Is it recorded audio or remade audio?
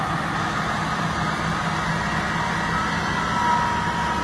recorded